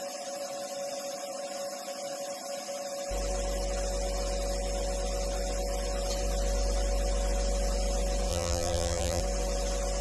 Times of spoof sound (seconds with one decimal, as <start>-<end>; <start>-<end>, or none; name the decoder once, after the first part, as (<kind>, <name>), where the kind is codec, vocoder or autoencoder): 8.3-9.2 (vocoder, BigVGAN v2)